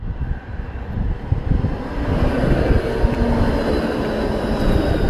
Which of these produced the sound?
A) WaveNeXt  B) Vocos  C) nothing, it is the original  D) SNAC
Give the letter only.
C